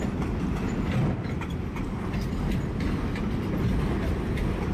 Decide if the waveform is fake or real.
real